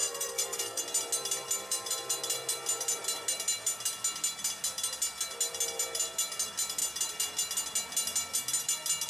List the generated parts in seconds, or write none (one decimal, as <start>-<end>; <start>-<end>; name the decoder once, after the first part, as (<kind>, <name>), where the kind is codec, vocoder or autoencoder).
0.0-0.8 (codec, SNAC)